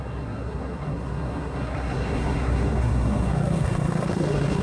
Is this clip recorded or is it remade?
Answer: remade